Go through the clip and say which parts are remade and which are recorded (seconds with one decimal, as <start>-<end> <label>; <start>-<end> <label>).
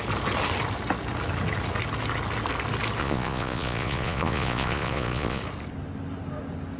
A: 0.0-3.0 recorded; 3.0-5.4 remade; 5.4-6.8 recorded